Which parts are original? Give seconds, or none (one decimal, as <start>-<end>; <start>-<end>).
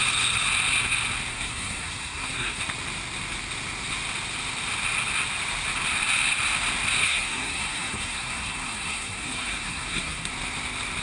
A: 0.0-1.3; 2.6-7.0; 10.3-11.0